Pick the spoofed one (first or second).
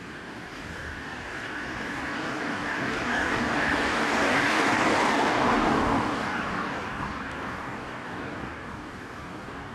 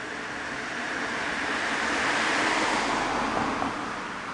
first